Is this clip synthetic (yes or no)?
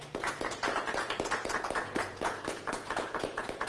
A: yes